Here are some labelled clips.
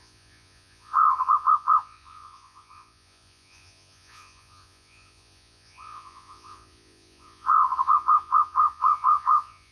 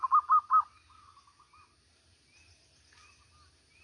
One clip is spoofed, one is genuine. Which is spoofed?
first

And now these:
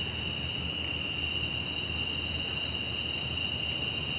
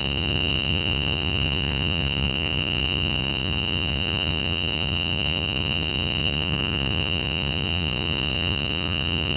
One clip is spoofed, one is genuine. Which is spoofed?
second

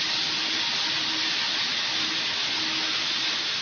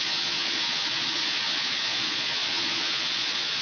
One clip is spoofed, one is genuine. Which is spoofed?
second